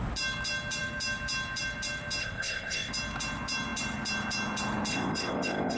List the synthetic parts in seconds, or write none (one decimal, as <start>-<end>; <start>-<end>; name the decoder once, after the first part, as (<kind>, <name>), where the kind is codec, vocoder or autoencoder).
2.2-2.9 (codec, ZipCodec); 4.9-5.8